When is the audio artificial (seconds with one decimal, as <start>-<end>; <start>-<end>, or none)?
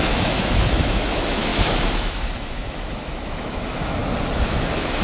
0.0-4.0; 4.6-5.0